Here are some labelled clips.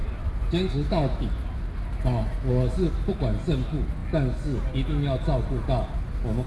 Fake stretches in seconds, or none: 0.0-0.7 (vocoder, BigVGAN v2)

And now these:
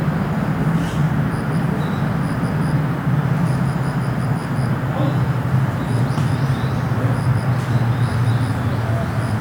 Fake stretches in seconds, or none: none

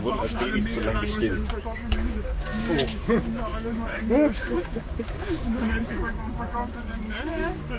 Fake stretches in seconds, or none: 0.0-7.8 (codec, DAC)

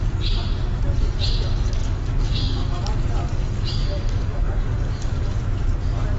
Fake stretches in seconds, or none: 1.8-2.8 (codec, DAC); 3.3-5.4

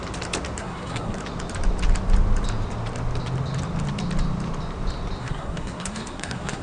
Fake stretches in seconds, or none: 0.6-1.2 (codec, SNAC); 5.2-6.6